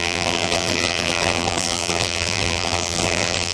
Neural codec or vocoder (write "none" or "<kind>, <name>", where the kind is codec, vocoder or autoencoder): vocoder, BigVGAN v2